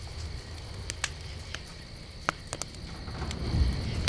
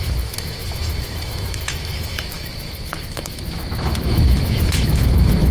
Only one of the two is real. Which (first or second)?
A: first